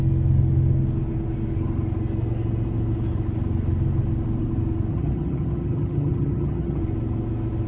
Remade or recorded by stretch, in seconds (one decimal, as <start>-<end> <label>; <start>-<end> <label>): 0.0-4.9 recorded; 4.9-6.8 remade; 6.8-7.7 recorded